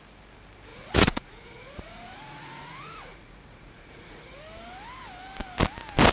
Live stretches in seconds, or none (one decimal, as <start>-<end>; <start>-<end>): 0.0-0.7; 4.4-6.1